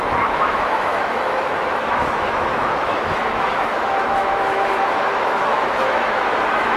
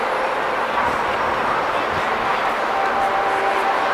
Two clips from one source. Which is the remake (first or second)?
first